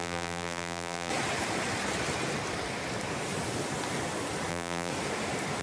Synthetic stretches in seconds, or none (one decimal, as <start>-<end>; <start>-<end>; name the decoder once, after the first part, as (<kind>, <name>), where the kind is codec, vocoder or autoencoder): 0.0-1.1 (vocoder, BigVGAN v2); 4.5-4.9